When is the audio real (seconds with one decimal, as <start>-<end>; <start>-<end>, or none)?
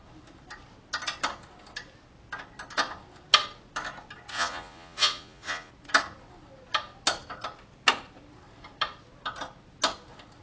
0.0-4.3; 5.7-10.4